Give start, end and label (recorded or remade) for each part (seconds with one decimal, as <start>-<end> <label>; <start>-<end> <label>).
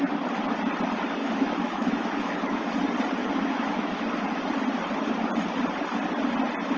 0.0-1.2 recorded; 1.2-2.7 remade; 2.7-3.2 recorded; 3.2-4.0 remade; 4.0-6.8 recorded